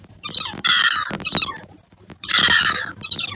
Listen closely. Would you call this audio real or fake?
fake